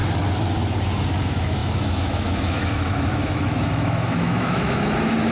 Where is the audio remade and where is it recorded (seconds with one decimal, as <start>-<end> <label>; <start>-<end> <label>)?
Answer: 0.0-1.2 recorded; 1.2-5.3 remade